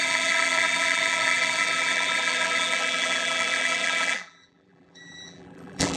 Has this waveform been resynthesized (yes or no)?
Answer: yes